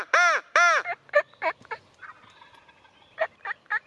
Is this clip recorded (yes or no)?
yes